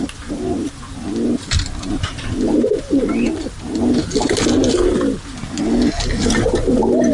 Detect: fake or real real